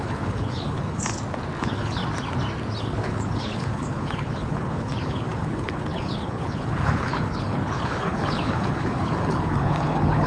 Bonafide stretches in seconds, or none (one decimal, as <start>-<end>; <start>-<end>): 1.1-1.6; 2.0-2.8